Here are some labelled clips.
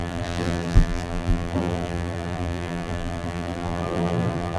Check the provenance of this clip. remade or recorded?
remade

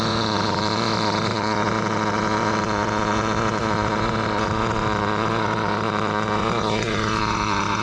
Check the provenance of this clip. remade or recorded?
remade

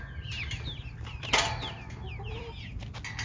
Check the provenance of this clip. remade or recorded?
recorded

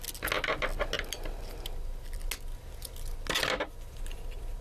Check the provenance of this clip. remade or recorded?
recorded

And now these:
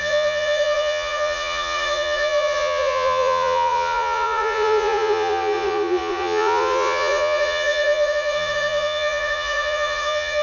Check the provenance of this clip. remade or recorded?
remade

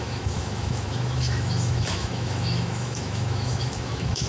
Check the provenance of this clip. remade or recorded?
remade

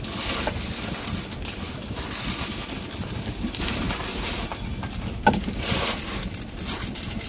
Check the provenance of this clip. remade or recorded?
recorded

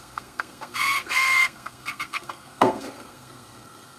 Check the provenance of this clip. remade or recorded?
remade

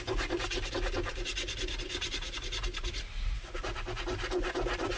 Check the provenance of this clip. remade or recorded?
recorded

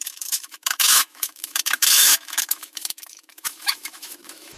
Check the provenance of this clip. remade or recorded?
remade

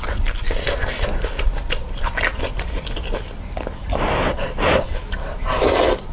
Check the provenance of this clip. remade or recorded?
remade